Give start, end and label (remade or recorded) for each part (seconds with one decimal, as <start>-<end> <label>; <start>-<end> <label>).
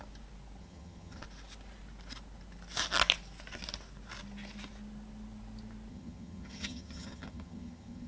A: 0.0-0.6 recorded; 0.6-1.2 remade; 1.2-5.9 recorded; 5.9-8.1 remade